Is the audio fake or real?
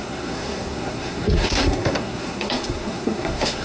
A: fake